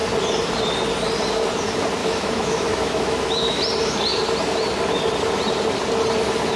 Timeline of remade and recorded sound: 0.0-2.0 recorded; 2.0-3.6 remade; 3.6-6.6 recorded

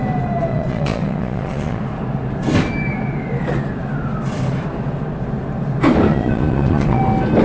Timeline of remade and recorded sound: 0.0-0.5 recorded; 0.5-1.8 remade; 1.8-6.1 recorded; 6.1-7.0 remade; 7.0-7.4 recorded